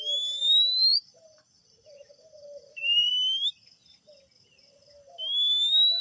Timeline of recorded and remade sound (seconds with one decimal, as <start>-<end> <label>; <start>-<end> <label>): 0.0-0.9 recorded; 0.9-3.1 remade; 3.1-6.0 recorded